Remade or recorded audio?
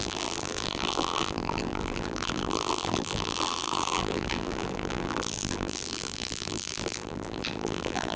remade